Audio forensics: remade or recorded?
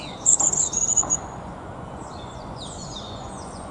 remade